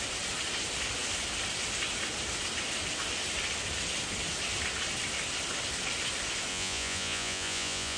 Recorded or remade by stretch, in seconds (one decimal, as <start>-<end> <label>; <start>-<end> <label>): 0.0-6.5 recorded; 6.5-8.0 remade